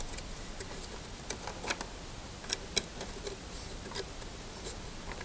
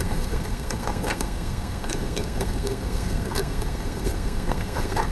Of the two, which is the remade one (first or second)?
second